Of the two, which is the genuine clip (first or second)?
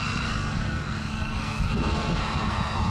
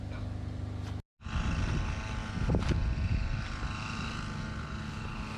second